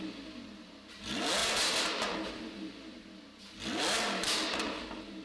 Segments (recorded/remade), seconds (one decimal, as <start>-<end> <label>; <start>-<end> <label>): 0.0-5.2 recorded